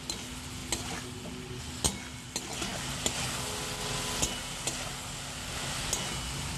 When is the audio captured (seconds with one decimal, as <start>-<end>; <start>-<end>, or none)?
0.0-6.6